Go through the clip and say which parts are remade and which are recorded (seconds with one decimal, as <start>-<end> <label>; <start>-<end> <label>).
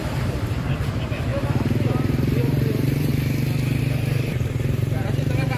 0.0-1.3 remade; 1.3-2.4 recorded; 2.4-3.1 remade; 3.1-3.8 recorded; 3.8-5.6 remade